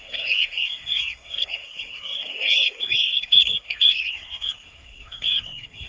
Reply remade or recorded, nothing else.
remade